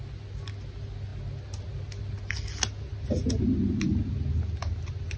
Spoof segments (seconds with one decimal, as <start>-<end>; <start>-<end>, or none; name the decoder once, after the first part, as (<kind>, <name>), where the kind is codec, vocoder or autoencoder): none

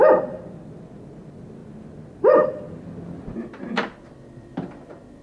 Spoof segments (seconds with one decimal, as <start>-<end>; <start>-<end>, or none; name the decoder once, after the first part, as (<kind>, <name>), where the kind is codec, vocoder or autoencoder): none